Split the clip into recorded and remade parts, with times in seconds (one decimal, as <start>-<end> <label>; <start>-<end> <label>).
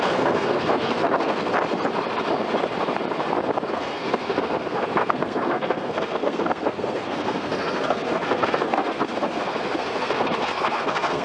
0.0-1.5 remade; 1.5-3.7 recorded; 3.7-11.2 remade